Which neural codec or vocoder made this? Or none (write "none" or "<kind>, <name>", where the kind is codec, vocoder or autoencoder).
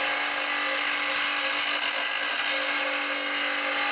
none